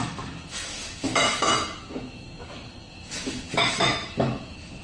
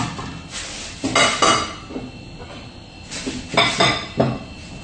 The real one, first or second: second